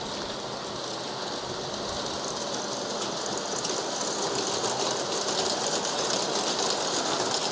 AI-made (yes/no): no